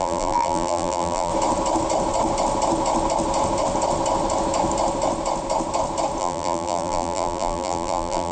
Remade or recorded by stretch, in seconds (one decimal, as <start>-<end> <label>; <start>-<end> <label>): 0.0-1.3 remade; 1.3-6.2 recorded; 6.2-8.3 remade